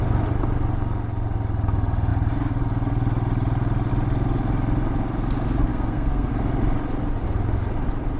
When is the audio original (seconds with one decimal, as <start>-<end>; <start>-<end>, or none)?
0.0-5.7; 6.3-8.2